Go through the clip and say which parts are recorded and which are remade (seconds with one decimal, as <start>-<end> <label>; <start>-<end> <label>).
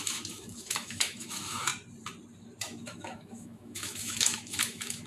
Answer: 0.0-1.7 remade; 1.7-2.6 recorded; 2.6-5.1 remade